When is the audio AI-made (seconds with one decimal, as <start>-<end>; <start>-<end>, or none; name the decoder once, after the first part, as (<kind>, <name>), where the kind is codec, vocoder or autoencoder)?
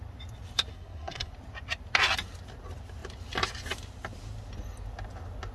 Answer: 0.7-1.3 (codec, SNAC)